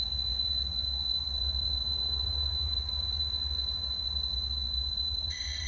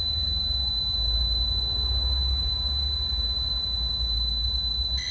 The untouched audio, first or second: second